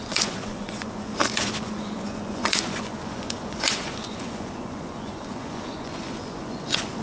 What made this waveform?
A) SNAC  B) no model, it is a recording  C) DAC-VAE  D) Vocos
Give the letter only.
D